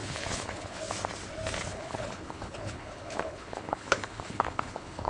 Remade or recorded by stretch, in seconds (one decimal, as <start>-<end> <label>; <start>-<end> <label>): 0.0-0.8 remade; 0.8-1.7 recorded; 1.7-5.1 remade